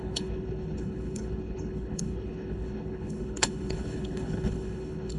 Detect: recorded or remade remade